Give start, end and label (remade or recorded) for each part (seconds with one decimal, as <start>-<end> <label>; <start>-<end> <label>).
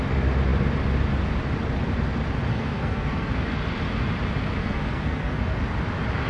0.0-2.5 recorded; 2.5-3.3 remade; 3.3-4.6 recorded; 4.6-5.6 remade; 5.6-6.3 recorded